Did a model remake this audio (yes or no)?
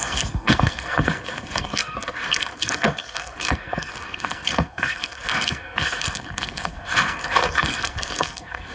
yes